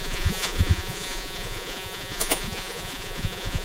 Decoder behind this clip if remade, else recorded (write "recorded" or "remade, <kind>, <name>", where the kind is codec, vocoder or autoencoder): remade, vocoder, Vocos